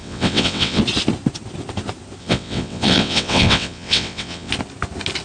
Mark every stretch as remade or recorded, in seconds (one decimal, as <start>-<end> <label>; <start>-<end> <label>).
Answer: 0.0-0.8 remade; 0.8-2.2 recorded; 2.2-4.5 remade; 4.5-5.2 recorded